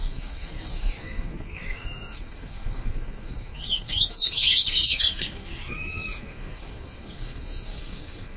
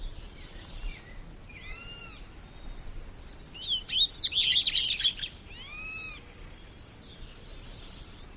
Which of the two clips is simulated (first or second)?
first